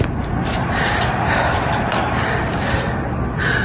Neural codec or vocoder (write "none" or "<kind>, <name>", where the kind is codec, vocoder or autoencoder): none